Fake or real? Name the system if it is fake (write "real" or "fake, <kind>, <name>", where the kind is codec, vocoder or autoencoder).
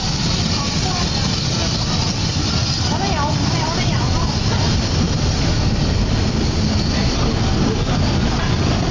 real